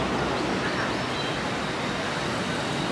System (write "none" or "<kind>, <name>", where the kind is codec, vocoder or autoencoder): none